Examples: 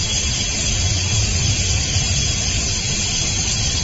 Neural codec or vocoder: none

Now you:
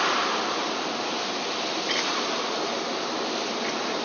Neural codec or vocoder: none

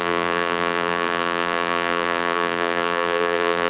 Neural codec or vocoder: vocoder, BigVGAN v2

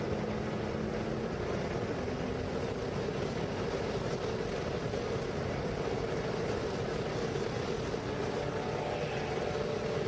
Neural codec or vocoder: none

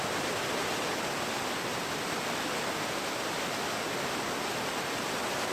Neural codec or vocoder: none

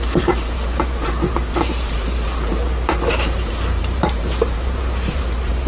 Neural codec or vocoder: vocoder, BigVGAN v2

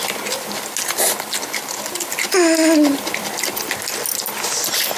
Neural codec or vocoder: none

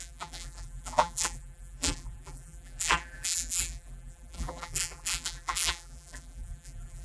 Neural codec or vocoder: vocoder, BigVGAN v2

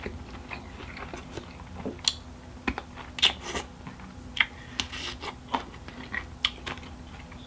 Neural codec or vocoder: none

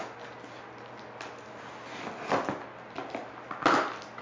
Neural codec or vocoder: none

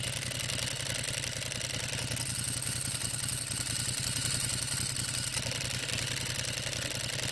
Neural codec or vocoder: none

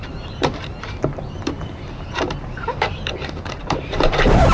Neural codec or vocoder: vocoder, BigVGAN v2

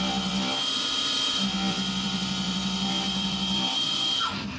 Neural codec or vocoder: vocoder, BigVGAN v2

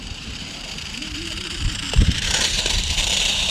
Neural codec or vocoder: vocoder, BigVGAN v2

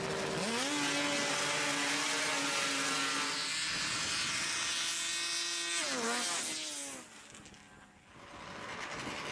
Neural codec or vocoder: none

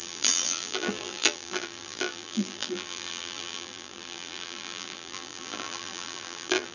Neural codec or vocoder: vocoder, BigVGAN v2